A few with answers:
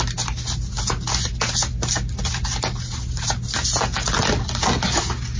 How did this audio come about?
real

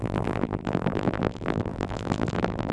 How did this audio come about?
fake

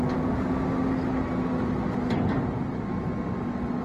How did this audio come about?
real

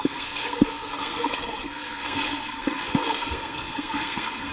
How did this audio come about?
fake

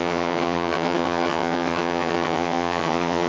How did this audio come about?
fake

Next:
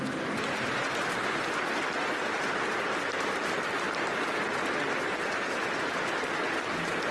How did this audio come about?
real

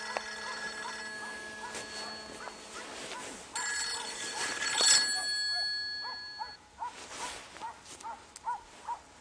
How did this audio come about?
real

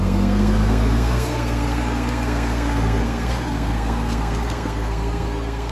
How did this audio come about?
fake